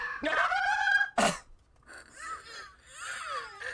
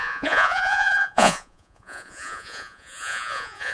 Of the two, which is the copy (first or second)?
second